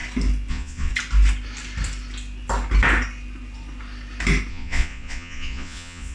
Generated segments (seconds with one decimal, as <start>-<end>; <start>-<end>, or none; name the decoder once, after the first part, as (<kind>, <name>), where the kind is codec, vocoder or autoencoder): 0.5-0.9 (vocoder, Vocos); 4.5-6.1